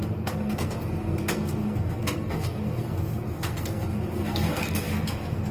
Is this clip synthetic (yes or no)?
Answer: yes